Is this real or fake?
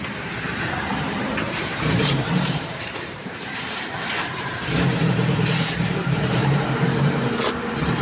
fake